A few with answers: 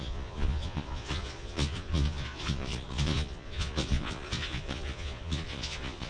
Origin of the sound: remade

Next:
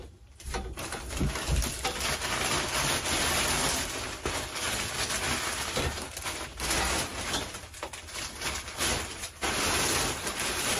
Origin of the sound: recorded